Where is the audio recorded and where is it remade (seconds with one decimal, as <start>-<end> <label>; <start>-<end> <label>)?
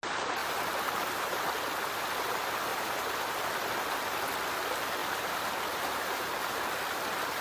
0.0-0.4 recorded; 0.4-1.4 remade; 1.4-2.7 recorded; 2.7-3.3 remade; 3.3-5.0 recorded; 5.0-6.3 remade; 6.3-7.4 recorded